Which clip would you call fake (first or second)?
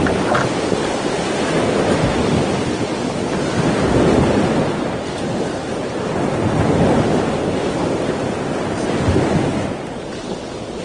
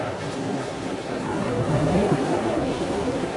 second